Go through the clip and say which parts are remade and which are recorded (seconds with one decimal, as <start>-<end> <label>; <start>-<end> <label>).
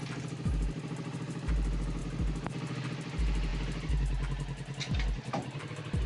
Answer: 0.0-6.1 recorded